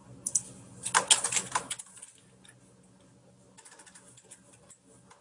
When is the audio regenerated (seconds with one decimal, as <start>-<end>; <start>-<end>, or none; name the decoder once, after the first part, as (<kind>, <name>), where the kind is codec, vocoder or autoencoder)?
none